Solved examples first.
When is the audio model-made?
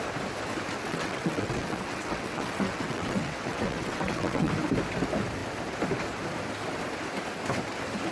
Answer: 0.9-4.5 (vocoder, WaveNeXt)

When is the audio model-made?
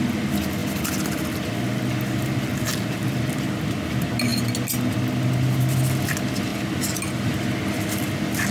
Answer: none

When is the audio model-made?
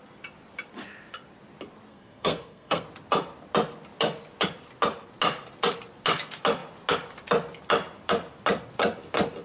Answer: 1.9-2.8 (codec, SNAC)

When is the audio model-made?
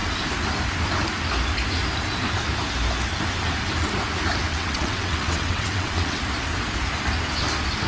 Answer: 4.5-6.2 (vocoder, WaveNeXt)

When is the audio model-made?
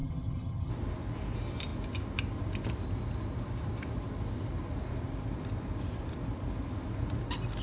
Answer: 0.0-0.7 (vocoder, HiFi-GAN)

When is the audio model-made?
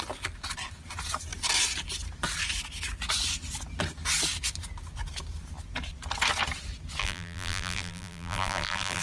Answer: 7.0-9.0 (vocoder, BigVGAN v2)